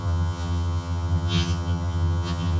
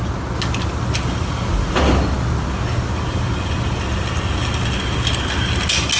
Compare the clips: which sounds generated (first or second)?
first